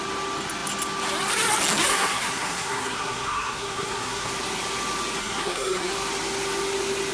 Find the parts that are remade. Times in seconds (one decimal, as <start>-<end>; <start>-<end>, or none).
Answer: 1.9-4.3; 5.2-5.9